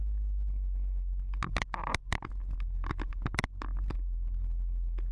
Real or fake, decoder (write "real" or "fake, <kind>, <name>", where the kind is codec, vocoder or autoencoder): real